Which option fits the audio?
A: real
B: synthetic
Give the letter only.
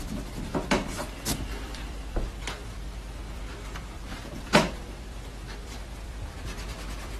B